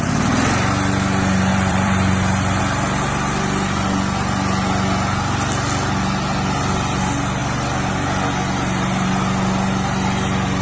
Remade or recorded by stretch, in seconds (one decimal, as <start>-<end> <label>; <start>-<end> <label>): 0.0-1.5 recorded; 1.5-2.6 remade; 2.6-10.6 recorded

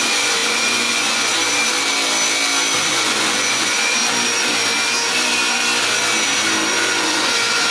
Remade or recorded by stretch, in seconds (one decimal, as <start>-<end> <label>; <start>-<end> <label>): 0.0-1.3 remade; 1.3-2.8 recorded; 2.8-4.0 remade; 4.0-6.7 recorded; 6.7-7.7 remade